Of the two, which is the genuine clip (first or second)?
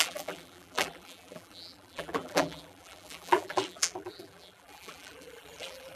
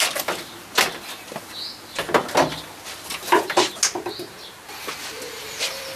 second